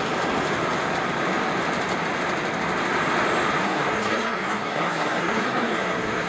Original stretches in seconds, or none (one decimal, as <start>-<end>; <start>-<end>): 0.0-3.6